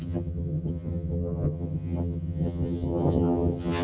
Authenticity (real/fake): fake